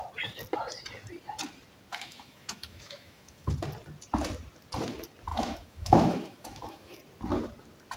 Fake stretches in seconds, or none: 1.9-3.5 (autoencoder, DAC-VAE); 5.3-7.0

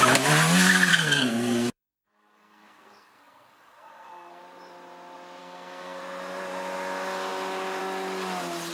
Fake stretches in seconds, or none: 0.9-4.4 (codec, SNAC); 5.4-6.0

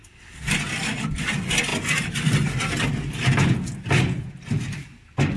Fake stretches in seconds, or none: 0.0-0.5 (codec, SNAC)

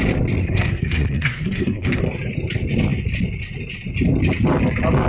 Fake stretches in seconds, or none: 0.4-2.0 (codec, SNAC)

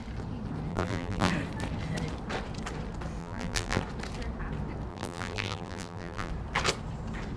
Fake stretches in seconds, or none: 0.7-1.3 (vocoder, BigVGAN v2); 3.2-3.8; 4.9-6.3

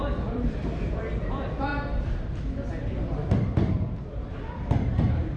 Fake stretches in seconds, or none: 0.0-1.7 (vocoder, BigVGAN v2); 3.0-5.4